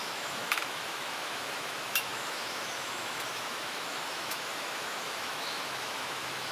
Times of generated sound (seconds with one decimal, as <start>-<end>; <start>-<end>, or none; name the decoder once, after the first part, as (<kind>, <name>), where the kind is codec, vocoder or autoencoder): 0.0-6.5 (autoencoder, DAC-VAE)